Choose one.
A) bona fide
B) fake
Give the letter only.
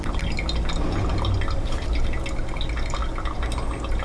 A